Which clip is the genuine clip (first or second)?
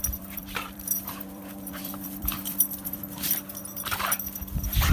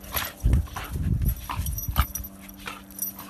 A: second